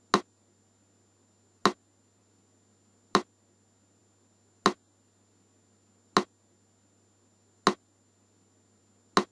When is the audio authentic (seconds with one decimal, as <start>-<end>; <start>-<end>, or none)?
0.0-9.3